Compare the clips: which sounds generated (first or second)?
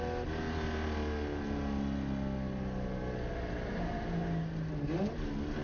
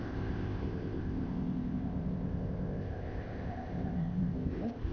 second